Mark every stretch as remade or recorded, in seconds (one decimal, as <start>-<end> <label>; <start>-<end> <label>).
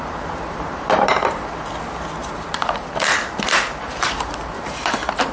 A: 0.0-1.7 remade; 1.7-2.2 recorded; 2.2-5.3 remade